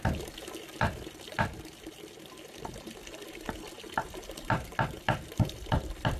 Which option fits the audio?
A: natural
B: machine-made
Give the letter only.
A